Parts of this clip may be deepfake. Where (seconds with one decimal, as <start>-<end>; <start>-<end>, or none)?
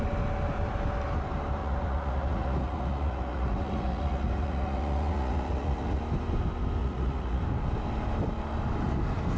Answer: 1.6-6.0; 6.8-7.4